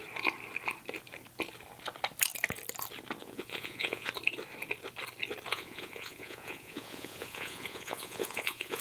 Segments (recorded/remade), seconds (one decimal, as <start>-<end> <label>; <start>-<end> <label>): 0.0-3.2 recorded; 3.2-4.1 remade; 4.1-5.5 recorded; 5.5-8.8 remade